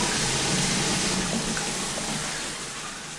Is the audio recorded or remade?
recorded